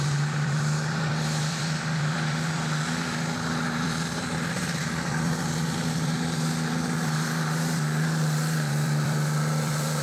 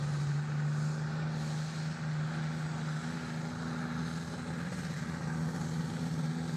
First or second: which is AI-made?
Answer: first